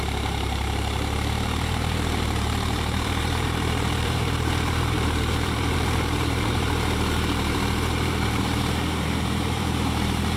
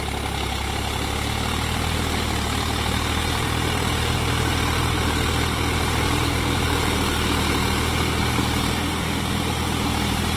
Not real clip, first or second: first